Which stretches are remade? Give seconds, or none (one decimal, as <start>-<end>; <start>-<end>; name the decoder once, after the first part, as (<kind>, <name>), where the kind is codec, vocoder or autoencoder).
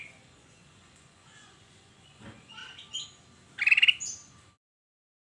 0.0-2.6 (vocoder, Vocos)